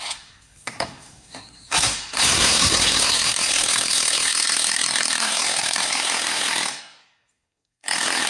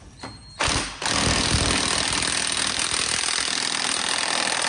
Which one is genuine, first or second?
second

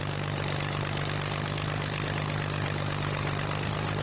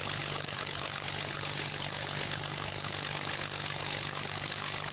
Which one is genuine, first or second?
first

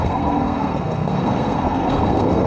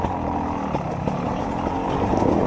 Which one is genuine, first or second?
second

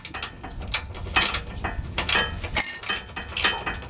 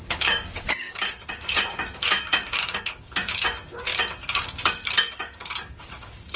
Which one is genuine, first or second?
first